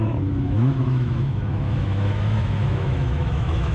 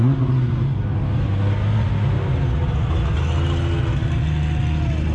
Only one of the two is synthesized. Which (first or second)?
first